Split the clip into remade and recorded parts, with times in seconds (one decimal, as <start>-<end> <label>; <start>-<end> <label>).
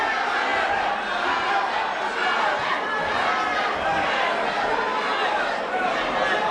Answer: 0.0-6.5 recorded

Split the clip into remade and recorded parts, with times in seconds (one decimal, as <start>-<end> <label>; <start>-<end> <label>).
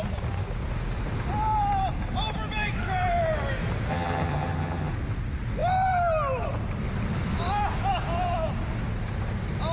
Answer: 0.0-3.9 recorded; 3.9-4.9 remade; 4.9-9.7 recorded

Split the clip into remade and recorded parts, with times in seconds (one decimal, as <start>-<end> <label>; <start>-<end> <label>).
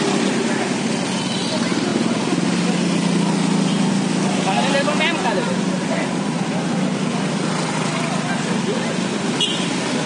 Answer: 0.0-10.1 recorded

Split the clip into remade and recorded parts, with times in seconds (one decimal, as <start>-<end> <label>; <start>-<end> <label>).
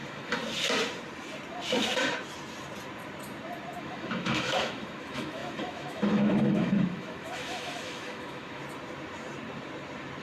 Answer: 0.0-0.4 remade; 0.4-3.8 recorded; 3.8-8.6 remade; 8.6-10.2 recorded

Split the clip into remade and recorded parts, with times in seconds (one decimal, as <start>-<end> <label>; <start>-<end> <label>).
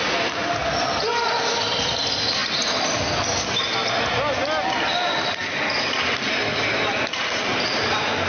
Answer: 0.0-8.3 recorded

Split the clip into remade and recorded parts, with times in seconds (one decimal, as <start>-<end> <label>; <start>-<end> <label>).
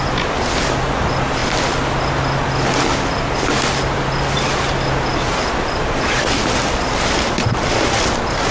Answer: 0.0-8.5 recorded